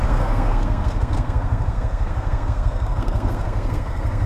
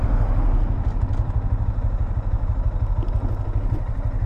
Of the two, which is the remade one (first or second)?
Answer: first